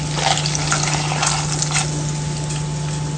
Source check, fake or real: real